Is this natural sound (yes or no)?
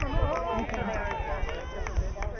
yes